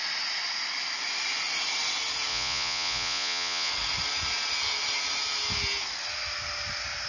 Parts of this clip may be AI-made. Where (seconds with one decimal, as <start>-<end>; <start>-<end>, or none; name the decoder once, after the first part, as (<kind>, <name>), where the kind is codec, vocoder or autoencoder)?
2.3-3.7 (vocoder, Vocos)